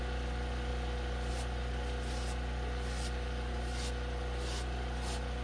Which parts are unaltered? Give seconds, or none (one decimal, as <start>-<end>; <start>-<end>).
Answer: 0.0-5.4